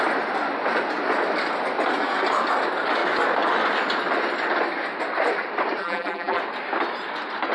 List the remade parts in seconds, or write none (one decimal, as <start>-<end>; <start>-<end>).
5.8-6.4